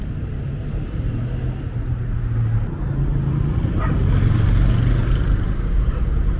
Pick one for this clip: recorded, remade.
recorded